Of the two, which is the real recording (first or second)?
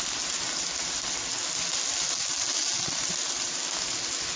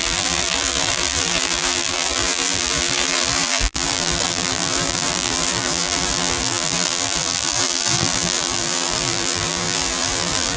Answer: first